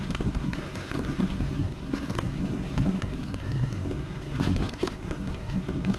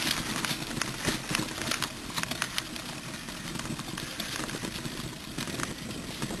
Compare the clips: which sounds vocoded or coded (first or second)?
first